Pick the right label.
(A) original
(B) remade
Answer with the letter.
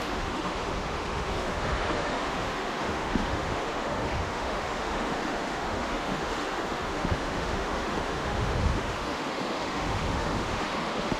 B